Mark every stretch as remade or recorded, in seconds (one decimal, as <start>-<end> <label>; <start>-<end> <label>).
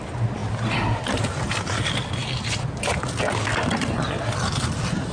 0.0-5.1 recorded